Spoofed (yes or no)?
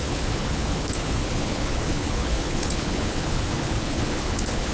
yes